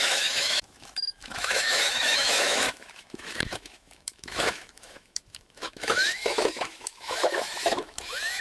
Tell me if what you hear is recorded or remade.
remade